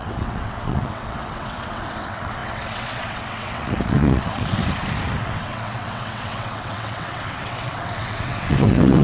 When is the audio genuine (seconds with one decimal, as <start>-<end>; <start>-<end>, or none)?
4.6-5.2